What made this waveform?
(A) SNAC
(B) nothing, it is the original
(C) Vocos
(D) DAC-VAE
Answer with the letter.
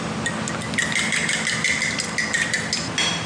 B